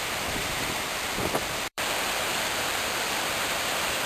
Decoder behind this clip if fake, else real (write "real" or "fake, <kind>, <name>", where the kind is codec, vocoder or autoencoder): fake, vocoder, BigVGAN v2